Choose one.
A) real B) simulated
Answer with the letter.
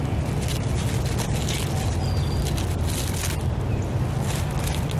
A